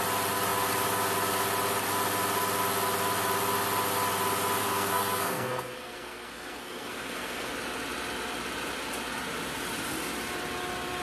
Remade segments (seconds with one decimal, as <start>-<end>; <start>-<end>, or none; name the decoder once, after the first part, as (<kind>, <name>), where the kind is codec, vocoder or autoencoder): 4.6-7.5 (codec, SNAC)